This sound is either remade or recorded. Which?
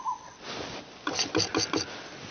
recorded